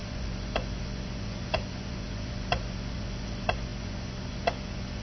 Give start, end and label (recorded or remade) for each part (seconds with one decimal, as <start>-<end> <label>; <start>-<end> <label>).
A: 0.0-5.0 remade